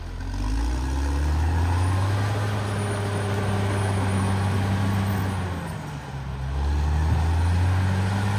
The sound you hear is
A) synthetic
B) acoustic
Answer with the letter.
B